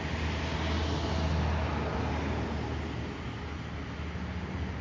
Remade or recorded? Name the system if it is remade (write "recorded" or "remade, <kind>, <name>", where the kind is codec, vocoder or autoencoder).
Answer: recorded